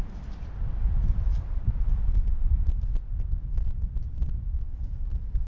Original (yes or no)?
yes